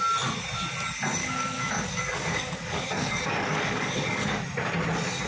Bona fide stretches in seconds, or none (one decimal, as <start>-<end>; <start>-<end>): 0.0-1.2; 4.4-5.3